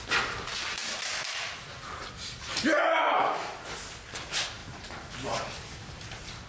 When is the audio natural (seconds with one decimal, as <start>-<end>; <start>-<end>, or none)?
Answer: 0.0-6.5